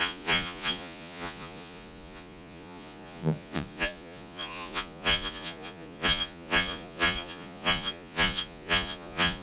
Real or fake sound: fake